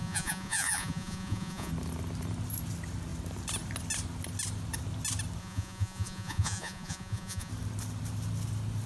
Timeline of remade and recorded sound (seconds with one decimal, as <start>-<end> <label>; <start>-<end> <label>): 0.0-1.7 remade; 1.7-5.4 recorded; 5.4-7.5 remade; 7.5-8.9 recorded